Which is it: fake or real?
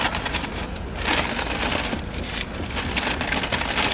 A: real